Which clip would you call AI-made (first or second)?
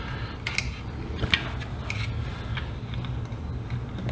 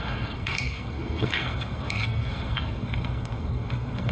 second